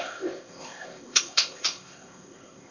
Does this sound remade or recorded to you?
remade